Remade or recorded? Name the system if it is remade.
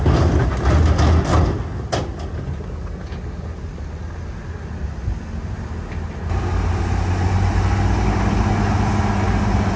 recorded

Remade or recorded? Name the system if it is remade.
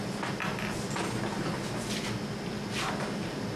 recorded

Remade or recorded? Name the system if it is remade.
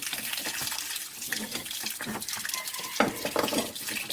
recorded